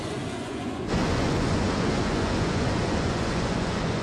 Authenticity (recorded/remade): remade